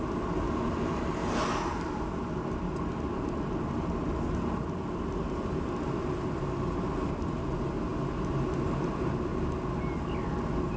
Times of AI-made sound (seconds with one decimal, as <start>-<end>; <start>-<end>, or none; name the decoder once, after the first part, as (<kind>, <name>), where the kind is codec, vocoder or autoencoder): none